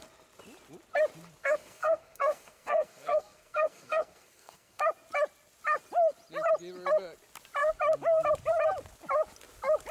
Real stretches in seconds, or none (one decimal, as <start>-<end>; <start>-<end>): 0.0-1.4; 4.8-9.9